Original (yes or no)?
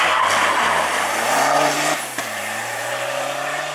yes